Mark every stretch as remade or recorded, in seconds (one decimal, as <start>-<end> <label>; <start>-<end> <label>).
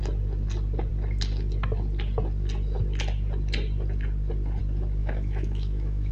0.0-5.0 recorded; 5.0-6.1 remade